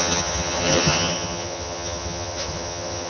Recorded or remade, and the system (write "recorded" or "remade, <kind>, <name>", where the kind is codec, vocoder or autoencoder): remade, vocoder, HiFi-GAN